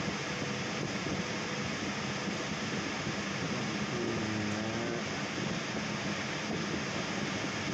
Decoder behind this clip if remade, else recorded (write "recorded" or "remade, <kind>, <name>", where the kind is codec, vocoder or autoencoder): recorded